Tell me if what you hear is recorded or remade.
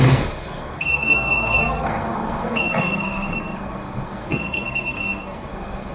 remade